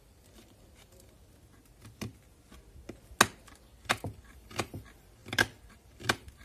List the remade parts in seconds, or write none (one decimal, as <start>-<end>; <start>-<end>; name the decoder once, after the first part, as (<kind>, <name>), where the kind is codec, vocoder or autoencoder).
0.0-1.2 (vocoder, BigVGAN v2); 3.4-6.4